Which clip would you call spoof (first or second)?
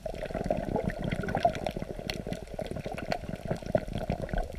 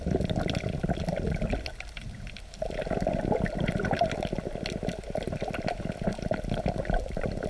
first